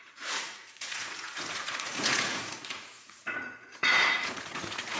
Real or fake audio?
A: fake